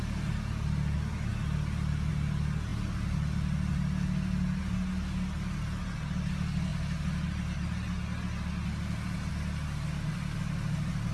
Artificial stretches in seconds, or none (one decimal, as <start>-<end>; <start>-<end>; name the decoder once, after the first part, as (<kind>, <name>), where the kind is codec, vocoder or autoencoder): none